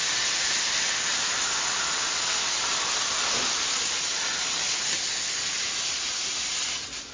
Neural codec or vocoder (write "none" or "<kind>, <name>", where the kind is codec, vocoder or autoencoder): none